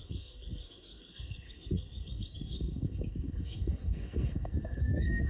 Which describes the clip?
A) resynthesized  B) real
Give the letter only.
A